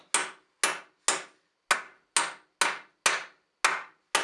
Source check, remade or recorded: recorded